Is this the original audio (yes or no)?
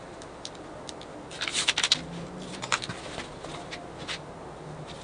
yes